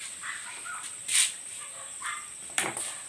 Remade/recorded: remade